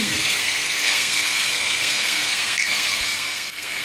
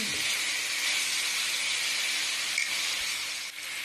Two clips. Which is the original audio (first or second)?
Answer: second